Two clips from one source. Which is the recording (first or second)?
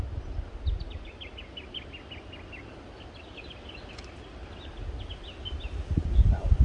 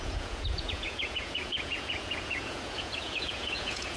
first